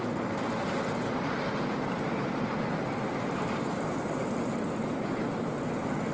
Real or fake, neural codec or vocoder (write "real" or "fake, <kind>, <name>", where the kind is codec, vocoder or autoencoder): real